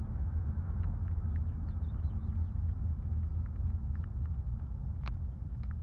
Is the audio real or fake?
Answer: fake